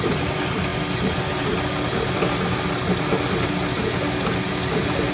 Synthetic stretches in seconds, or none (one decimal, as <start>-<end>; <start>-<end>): none